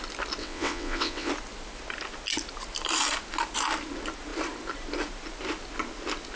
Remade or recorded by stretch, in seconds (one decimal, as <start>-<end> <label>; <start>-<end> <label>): 0.0-0.4 recorded; 0.4-1.3 remade; 1.3-6.4 recorded